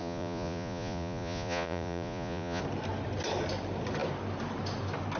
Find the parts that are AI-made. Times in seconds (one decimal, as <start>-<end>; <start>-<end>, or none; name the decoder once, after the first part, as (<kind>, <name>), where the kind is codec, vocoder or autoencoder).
0.0-2.6 (vocoder, Vocos)